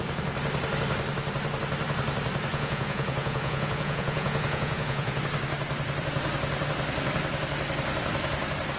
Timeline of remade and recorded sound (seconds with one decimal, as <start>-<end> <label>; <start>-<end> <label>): 0.0-2.5 recorded; 2.5-5.2 remade; 5.2-8.8 recorded